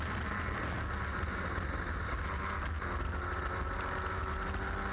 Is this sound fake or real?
real